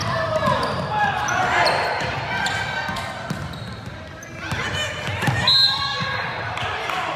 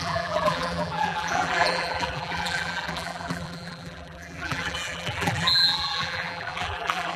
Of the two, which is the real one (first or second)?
first